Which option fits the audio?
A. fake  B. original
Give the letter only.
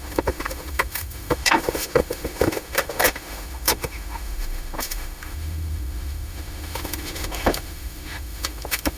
A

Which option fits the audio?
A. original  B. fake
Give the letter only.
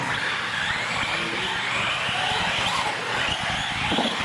A